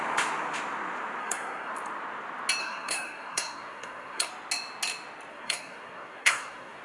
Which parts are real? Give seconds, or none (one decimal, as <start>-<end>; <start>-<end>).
0.0-1.2; 1.7-2.6; 4.3-5.3